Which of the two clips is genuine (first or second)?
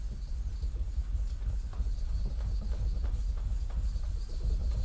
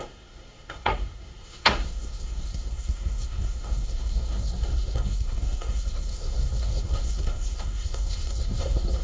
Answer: first